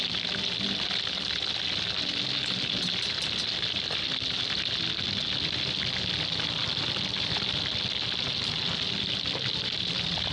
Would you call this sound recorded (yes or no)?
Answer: yes